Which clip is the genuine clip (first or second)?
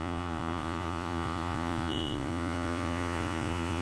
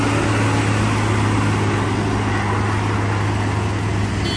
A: second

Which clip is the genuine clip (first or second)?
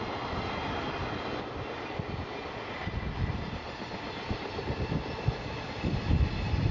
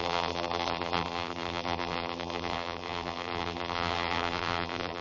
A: first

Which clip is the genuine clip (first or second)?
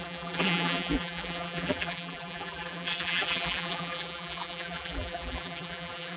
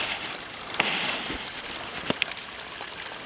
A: second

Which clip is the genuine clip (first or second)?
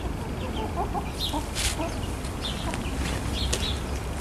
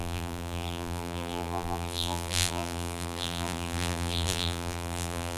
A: first